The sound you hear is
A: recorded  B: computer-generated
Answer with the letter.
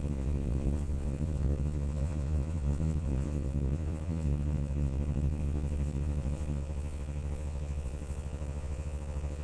B